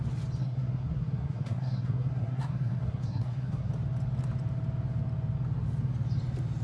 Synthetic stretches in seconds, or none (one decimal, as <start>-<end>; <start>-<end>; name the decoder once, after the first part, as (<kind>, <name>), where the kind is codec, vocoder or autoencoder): 0.4-3.7 (codec, SNAC)